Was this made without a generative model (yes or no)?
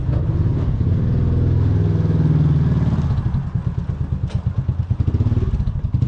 yes